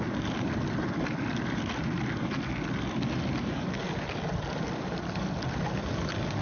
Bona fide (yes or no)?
yes